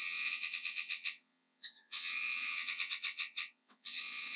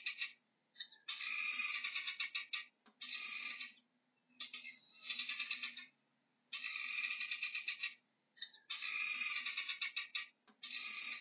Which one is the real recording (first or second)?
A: second